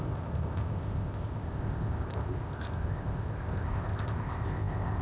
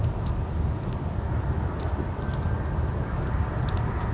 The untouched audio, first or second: second